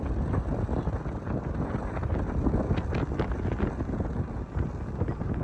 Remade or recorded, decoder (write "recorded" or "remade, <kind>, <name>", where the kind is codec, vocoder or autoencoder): recorded